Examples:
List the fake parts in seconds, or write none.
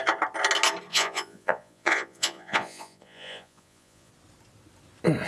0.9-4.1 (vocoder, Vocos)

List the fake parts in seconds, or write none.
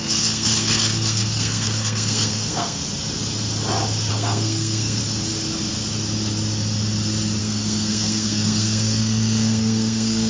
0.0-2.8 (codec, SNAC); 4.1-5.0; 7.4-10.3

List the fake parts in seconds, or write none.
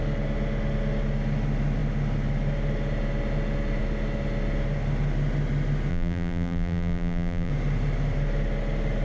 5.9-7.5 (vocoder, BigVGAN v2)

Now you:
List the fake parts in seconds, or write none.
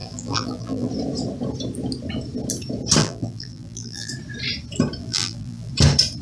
0.0-0.9 (vocoder, BigVGAN v2); 3.0-4.1; 5.0-5.7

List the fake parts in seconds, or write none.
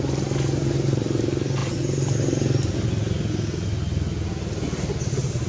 none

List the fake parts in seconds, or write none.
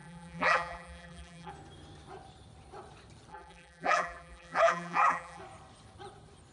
0.0-1.5 (vocoder, BigVGAN v2); 3.3-5.4